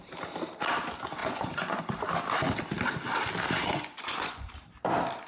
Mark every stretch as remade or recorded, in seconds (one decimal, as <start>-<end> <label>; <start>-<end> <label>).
0.0-1.2 recorded; 1.2-1.8 remade; 1.8-3.6 recorded; 3.6-4.5 remade; 4.5-5.3 recorded